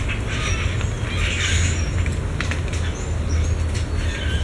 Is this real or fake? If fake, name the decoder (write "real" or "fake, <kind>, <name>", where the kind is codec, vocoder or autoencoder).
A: real